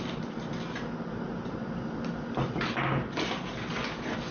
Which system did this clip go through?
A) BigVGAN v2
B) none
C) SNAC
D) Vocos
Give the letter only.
B